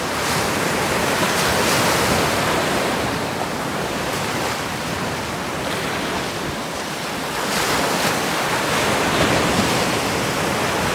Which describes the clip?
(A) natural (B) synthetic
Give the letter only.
B